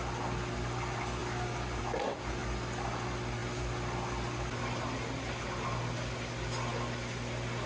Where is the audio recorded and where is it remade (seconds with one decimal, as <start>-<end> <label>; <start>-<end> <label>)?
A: 0.0-7.7 recorded